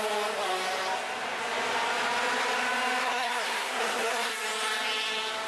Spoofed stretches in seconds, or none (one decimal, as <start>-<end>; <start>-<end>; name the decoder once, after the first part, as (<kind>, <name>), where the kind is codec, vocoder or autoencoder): 3.0-4.3 (codec, SNAC)